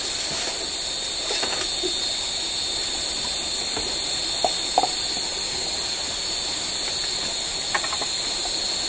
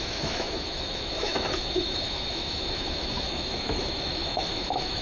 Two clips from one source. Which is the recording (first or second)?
first